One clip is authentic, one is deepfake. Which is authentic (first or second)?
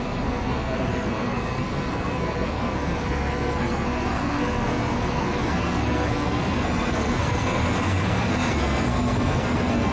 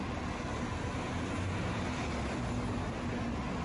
second